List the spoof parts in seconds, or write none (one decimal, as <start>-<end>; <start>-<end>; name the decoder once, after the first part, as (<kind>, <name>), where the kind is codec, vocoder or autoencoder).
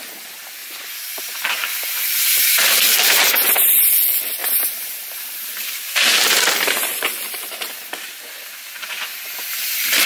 0.6-3.9 (vocoder, BigVGAN v2); 4.4-7.9